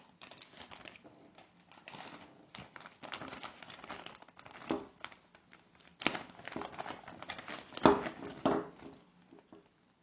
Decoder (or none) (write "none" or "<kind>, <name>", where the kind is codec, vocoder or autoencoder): none